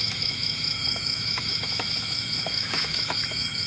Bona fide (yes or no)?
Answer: no